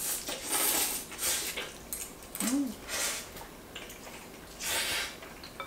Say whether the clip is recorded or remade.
recorded